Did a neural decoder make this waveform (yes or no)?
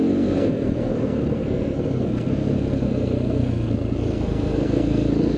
yes